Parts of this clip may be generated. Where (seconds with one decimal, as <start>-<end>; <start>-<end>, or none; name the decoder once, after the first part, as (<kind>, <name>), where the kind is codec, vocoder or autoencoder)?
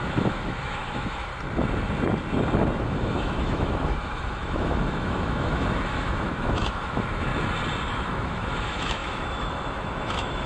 0.0-1.3 (autoencoder, DAC-VAE); 2.8-7.3; 7.9-10.5